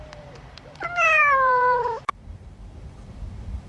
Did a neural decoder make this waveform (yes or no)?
yes